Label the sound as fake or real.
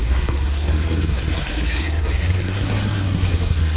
fake